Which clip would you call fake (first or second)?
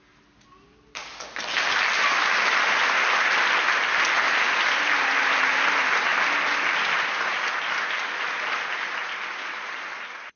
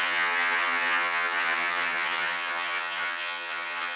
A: second